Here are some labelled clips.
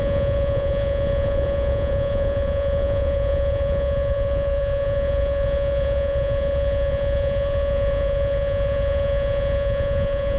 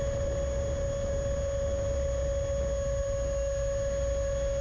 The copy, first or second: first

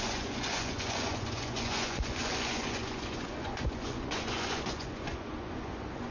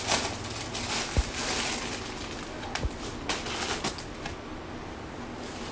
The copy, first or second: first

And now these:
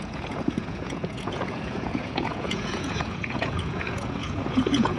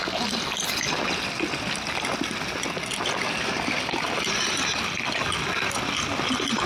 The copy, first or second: first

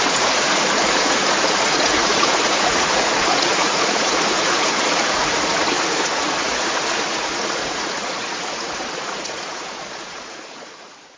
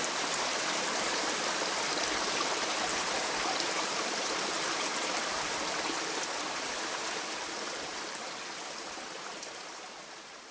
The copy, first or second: first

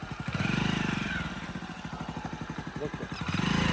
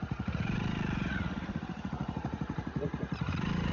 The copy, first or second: second